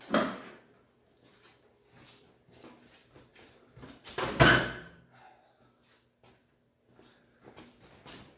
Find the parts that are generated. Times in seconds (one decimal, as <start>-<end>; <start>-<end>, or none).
none